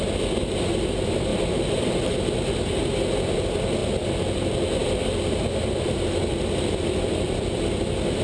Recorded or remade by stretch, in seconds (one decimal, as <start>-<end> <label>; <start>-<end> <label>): 0.0-1.3 recorded; 1.3-2.6 remade; 2.6-8.2 recorded